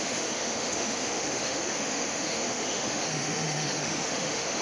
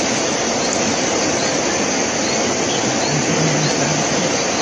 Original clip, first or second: second